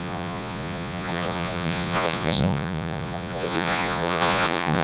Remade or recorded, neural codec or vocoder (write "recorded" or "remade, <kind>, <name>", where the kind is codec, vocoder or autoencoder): remade, vocoder, Vocos